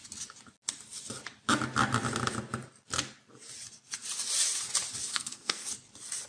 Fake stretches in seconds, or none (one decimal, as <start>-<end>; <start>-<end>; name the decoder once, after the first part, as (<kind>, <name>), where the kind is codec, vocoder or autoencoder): 5.1-5.7 (codec, SNAC)